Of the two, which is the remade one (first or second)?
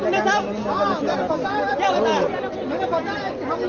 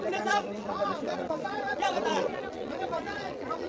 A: second